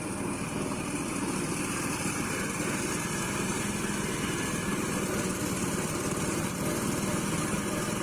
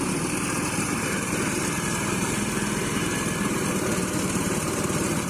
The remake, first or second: second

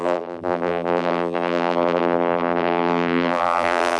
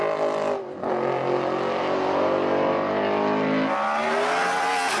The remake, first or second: first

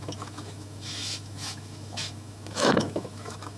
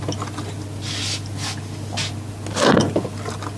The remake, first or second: first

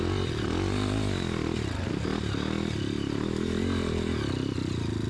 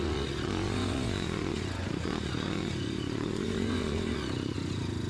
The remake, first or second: second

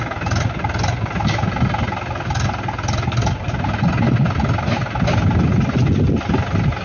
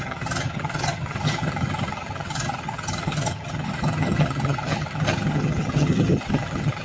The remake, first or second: second